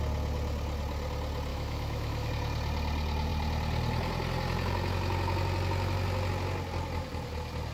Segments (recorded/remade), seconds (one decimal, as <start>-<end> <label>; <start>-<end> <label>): 0.0-1.5 recorded; 1.5-2.3 remade; 2.3-7.7 recorded